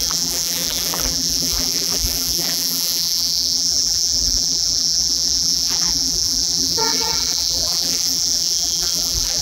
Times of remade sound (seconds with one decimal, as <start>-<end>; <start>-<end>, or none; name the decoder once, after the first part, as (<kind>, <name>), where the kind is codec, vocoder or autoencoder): 0.0-9.4 (vocoder, BigVGAN v2)